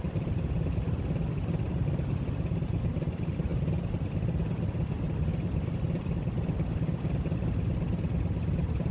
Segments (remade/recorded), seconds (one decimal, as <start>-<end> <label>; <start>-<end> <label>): 0.0-8.9 recorded